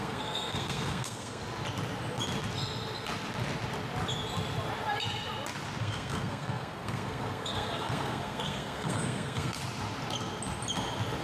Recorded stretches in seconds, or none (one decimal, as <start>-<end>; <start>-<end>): 1.4-5.8; 9.6-11.2